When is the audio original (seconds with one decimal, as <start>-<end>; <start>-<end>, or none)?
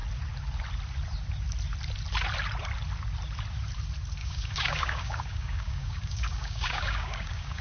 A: 0.0-4.2